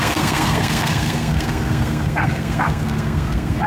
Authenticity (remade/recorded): remade